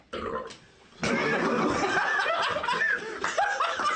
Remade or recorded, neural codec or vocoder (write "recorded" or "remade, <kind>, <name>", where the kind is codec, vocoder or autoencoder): recorded